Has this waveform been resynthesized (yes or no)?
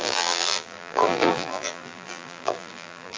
yes